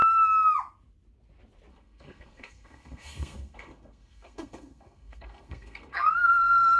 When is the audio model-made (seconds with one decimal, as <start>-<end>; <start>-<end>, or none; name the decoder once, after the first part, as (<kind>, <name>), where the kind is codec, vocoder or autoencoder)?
1.7-6.8 (codec, SNAC)

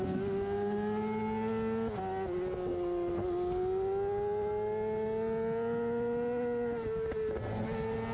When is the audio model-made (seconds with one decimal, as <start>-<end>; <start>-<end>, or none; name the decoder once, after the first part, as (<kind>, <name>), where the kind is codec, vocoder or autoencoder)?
none

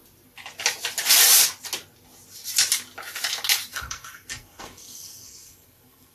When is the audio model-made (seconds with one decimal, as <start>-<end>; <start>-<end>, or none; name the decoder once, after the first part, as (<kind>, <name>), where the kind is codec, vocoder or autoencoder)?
3.7-6.1 (codec, SNAC)

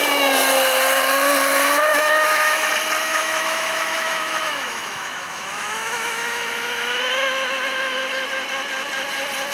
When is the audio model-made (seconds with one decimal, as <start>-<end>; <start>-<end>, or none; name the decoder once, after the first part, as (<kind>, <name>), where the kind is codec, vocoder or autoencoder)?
1.9-2.7 (autoencoder, DAC-VAE); 3.1-7.0